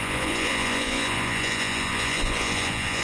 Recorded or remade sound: remade